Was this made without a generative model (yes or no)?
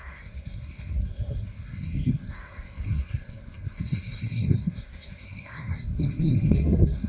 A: no